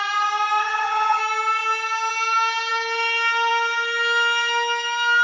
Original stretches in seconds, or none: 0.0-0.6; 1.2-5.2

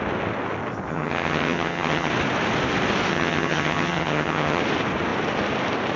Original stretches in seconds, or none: 0.0-0.9; 2.1-3.1; 4.6-6.0

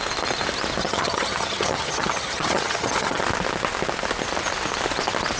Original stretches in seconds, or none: 0.0-0.8; 3.2-5.4

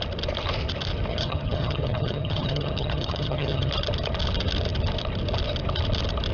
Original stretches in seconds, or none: 0.0-1.1; 3.7-6.3

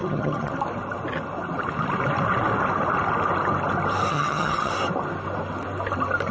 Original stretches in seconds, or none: 0.5-4.1; 4.7-6.3